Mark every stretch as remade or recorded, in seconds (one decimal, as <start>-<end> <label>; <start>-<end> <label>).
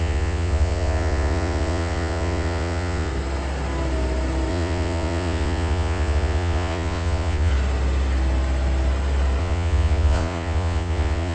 0.0-3.1 remade; 3.1-4.5 recorded; 4.5-7.5 remade; 7.5-9.4 recorded; 9.4-11.3 remade